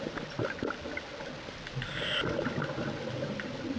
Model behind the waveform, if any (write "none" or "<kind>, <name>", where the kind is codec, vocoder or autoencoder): none